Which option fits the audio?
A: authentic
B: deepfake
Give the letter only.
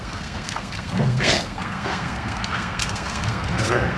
B